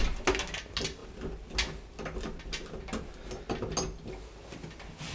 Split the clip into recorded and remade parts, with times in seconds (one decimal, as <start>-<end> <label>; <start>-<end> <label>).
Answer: 0.0-5.1 recorded